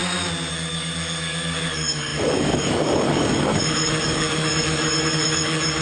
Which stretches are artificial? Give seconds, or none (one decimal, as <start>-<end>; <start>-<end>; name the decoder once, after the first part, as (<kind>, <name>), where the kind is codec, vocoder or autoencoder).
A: 0.5-5.8 (codec, DAC)